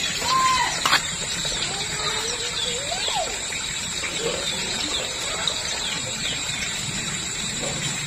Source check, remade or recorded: remade